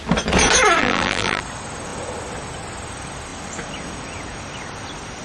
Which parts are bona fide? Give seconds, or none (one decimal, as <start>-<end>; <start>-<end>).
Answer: 0.0-0.8; 1.4-5.2